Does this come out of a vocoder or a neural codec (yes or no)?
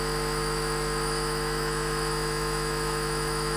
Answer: yes